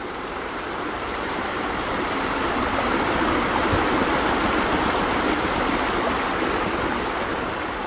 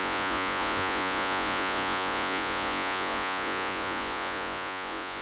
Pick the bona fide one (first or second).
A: first